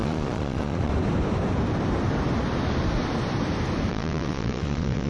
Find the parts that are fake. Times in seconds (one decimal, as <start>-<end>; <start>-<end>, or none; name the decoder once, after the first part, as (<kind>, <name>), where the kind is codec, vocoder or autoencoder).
0.0-0.9 (vocoder, Vocos); 3.9-5.1